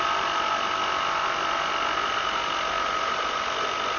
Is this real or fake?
real